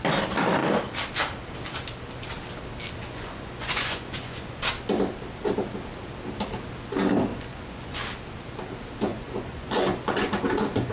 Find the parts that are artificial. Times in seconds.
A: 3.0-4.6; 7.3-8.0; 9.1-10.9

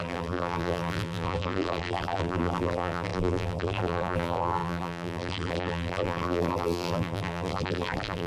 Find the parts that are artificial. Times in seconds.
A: 0.0-8.3

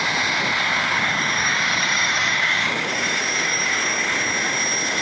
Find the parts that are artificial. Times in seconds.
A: 0.8-3.8

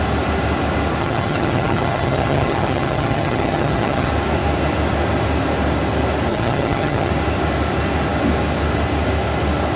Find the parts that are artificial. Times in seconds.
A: 1.0-4.1; 6.3-7.1

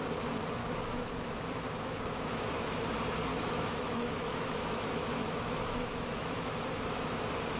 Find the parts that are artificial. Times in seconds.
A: 0.6-2.6; 3.3-6.6